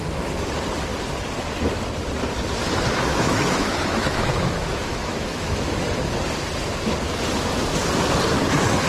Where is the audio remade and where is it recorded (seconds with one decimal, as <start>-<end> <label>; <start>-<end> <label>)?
0.0-3.1 recorded; 3.1-5.8 remade; 5.8-8.9 recorded